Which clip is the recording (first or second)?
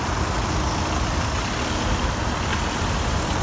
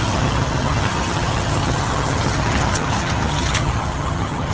first